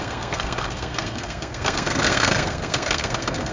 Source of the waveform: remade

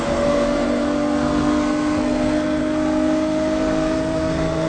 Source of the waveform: remade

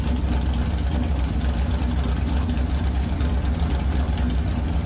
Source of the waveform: remade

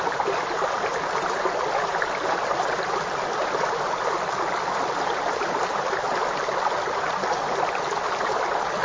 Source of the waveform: recorded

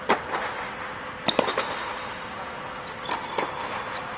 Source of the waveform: recorded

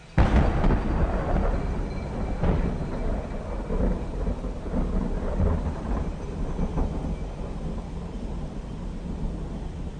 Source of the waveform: recorded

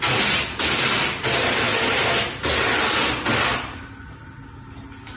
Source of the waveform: recorded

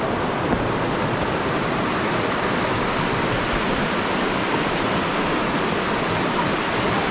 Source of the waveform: recorded